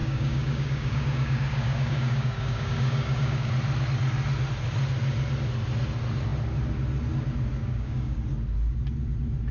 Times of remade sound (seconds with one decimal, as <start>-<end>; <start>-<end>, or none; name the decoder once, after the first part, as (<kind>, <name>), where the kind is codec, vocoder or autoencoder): 0.0-3.5 (codec, DAC); 7.6-8.2